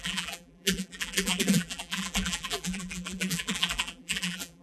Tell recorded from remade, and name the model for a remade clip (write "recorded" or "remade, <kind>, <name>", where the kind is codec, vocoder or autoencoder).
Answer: remade, vocoder, BigVGAN v2